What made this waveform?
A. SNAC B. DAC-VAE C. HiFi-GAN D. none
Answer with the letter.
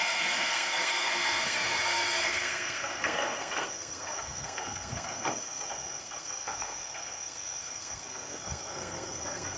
A